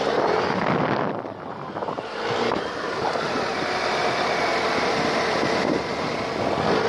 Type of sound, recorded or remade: recorded